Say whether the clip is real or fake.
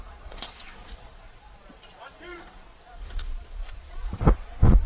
fake